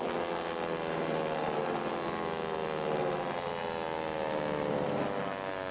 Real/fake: real